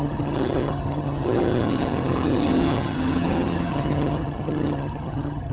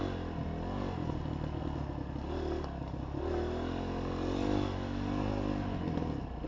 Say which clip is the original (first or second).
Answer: second